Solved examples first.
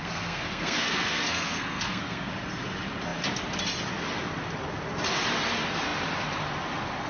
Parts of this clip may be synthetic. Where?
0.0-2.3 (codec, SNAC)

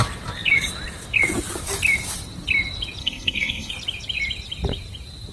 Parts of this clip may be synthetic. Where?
3.0-3.7 (codec, SNAC)

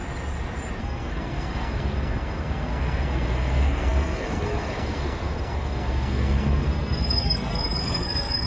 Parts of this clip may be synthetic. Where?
0.8-8.5 (codec, SNAC)

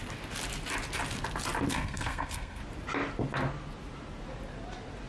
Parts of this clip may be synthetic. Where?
1.7-2.6 (codec, SNAC)

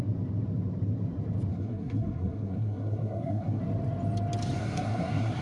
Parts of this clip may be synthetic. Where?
1.5-3.6 (codec, SNAC); 4.6-5.4